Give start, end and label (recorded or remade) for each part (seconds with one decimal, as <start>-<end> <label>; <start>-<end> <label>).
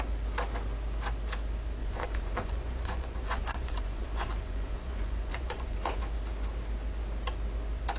0.0-1.8 recorded; 1.8-6.0 remade; 6.0-8.0 recorded